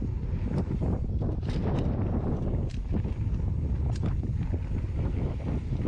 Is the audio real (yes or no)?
yes